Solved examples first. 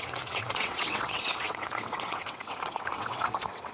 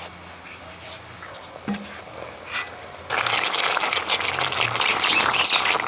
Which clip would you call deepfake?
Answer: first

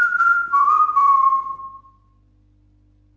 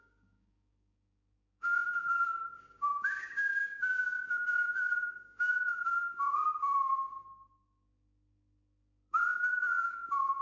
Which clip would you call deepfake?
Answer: second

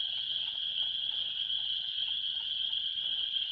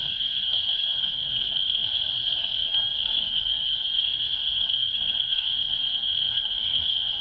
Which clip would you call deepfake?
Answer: second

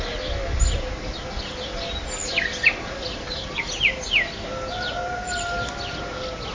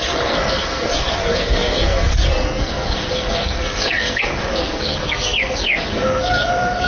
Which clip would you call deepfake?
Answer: second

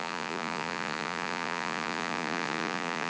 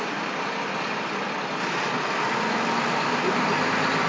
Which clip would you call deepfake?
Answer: first